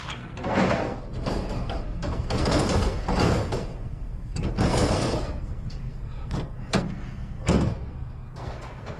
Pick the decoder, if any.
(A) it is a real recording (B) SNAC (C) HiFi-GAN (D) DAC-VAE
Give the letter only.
B